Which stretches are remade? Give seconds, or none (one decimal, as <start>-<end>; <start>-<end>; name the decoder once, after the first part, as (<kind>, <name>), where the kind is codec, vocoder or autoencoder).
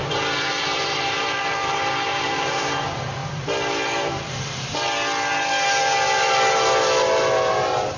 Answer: 0.0-3.2 (vocoder, BigVGAN v2); 7.5-8.0